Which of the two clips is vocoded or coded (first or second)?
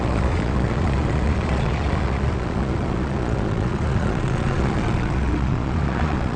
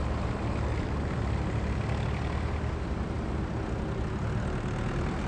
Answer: first